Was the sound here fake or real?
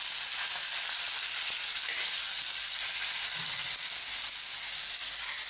real